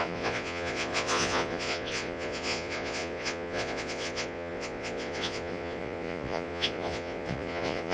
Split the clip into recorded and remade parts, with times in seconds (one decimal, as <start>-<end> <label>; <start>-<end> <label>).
0.0-7.9 remade